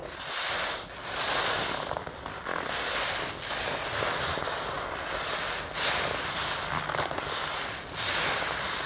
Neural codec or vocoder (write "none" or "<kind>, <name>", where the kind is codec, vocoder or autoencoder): none